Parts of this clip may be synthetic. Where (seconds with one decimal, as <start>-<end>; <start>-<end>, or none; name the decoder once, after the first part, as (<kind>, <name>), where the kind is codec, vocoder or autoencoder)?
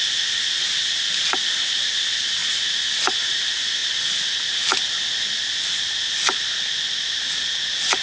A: none